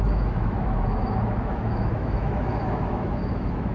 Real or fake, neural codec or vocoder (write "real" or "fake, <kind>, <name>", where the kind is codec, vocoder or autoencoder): fake, autoencoder, DAC-VAE